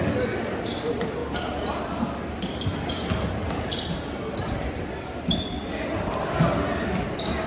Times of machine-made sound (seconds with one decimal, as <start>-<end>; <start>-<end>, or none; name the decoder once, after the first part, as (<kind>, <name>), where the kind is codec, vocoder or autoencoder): 3.4-5.7 (vocoder, BigVGAN v2)